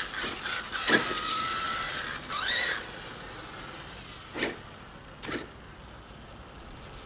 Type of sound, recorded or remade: recorded